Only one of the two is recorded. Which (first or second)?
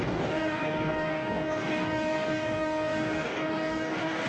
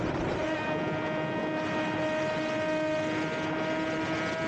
second